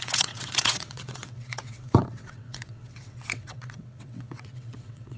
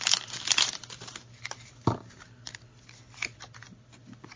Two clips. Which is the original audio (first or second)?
second